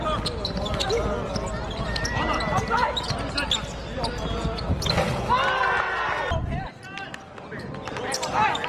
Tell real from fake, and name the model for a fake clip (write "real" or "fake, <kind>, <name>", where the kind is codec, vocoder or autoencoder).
real